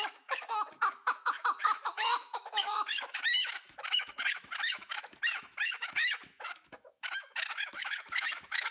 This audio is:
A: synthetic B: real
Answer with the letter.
A